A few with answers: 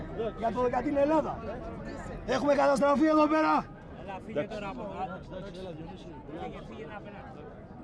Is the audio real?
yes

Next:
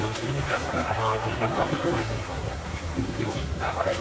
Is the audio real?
no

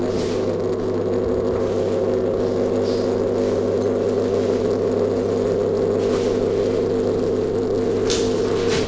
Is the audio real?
yes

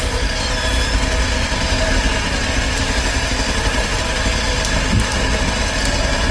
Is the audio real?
yes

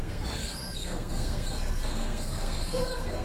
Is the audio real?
no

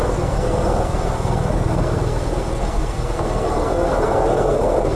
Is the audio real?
no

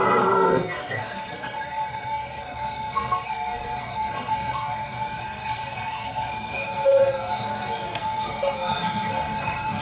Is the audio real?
no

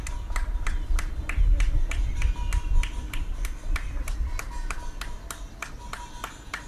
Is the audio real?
yes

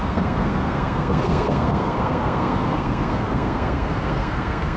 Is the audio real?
no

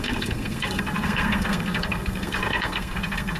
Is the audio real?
no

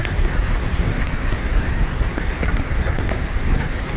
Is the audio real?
no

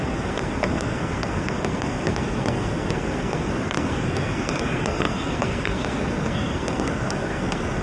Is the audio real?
no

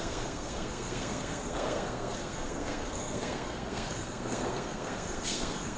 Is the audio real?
no